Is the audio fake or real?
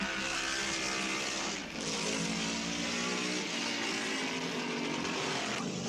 real